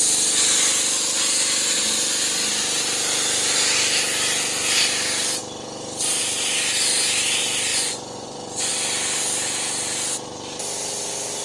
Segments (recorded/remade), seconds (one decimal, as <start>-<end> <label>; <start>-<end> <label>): 0.0-7.7 recorded; 7.7-8.7 remade; 8.7-11.4 recorded

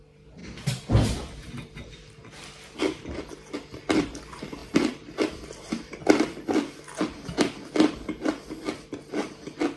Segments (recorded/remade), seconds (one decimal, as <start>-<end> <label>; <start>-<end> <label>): 0.0-9.8 recorded

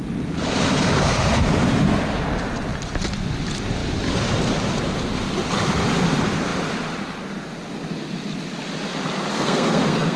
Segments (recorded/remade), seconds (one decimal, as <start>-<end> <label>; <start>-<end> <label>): 0.0-9.3 recorded; 9.3-10.2 remade

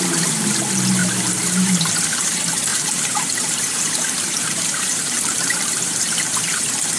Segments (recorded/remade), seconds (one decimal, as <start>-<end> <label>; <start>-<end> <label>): 0.0-1.0 recorded; 1.0-1.8 remade; 1.8-2.7 recorded; 2.7-7.0 remade

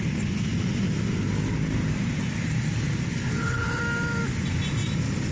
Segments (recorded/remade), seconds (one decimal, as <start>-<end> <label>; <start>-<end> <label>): 0.0-3.1 recorded; 3.1-3.8 remade; 3.8-5.3 recorded

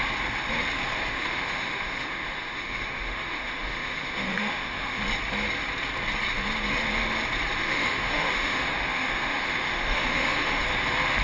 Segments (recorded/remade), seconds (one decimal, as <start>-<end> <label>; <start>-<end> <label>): 0.0-1.1 recorded; 1.1-5.0 remade; 5.0-7.6 recorded; 7.6-10.6 remade; 10.6-11.2 recorded

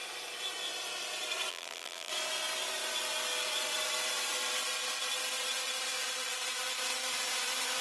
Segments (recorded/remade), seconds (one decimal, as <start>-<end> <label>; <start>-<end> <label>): 0.0-1.5 recorded; 1.5-2.1 remade; 2.1-7.8 recorded

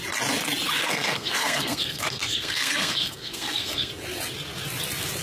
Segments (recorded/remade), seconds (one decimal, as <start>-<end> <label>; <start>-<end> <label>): 0.0-0.8 recorded; 0.8-3.9 remade; 3.9-5.2 recorded